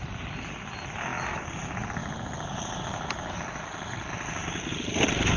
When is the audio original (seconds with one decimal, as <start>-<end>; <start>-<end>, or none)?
0.0-5.4